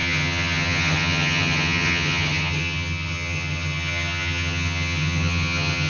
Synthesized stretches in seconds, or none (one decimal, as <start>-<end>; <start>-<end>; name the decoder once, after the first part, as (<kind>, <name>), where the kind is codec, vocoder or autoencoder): 0.0-5.9 (vocoder, HiFi-GAN)